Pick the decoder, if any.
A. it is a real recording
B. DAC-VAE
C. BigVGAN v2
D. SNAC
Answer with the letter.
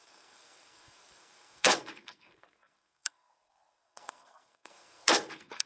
D